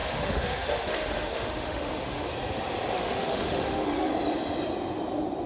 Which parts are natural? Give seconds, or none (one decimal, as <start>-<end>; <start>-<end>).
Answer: 2.3-2.9; 4.1-5.5